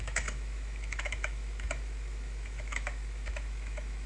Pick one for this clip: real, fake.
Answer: fake